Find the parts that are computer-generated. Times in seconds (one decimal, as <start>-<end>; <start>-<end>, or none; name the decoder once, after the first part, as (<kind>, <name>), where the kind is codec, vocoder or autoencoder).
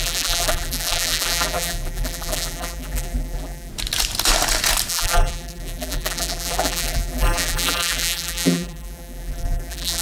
0.0-3.7 (vocoder, BigVGAN v2); 4.9-10.0